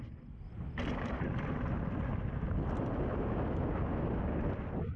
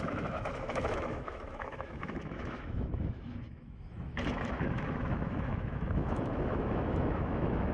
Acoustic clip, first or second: first